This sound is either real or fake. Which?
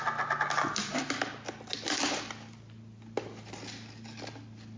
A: real